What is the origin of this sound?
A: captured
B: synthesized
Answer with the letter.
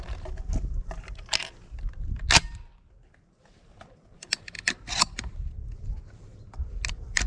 A